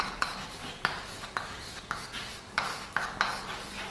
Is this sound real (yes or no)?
no